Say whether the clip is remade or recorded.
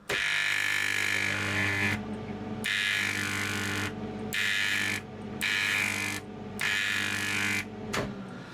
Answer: recorded